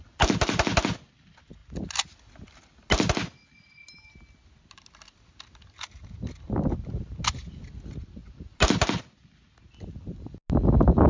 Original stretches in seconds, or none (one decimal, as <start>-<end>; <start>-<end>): 0.0-11.1